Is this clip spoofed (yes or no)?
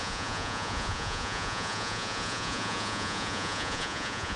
yes